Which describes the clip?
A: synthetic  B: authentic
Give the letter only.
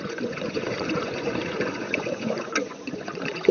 A